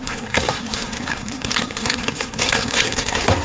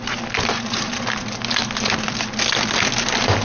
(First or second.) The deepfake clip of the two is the first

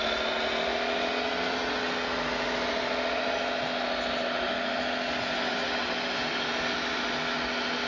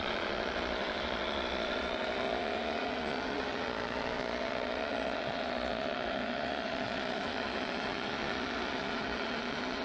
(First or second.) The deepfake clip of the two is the second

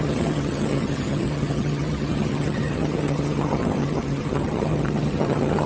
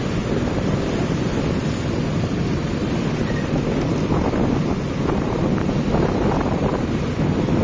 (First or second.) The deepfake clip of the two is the first